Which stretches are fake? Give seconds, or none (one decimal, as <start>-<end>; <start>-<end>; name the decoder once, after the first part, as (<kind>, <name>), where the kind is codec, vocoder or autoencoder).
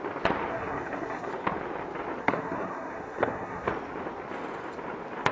0.5-1.3 (codec, SNAC); 2.2-3.7